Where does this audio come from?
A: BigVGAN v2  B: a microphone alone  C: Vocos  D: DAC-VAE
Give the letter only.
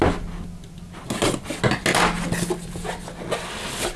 B